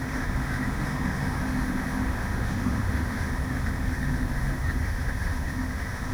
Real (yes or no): no